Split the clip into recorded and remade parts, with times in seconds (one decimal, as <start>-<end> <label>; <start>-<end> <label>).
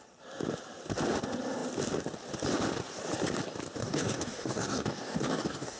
0.0-3.8 recorded; 3.8-5.8 remade